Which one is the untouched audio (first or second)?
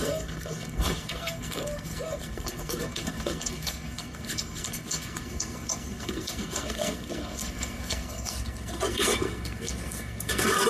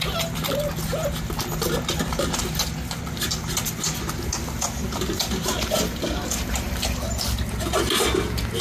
second